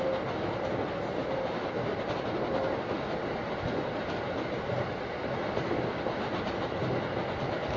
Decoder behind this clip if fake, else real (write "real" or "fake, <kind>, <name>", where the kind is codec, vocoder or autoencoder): real